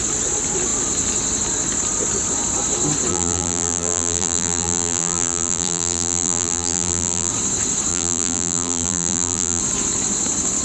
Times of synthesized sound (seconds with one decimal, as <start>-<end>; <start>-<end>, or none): 3.1-7.3; 7.9-9.6